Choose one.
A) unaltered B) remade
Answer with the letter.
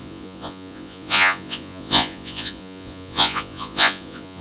B